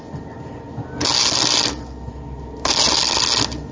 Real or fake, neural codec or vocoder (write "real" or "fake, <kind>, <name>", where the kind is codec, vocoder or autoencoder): real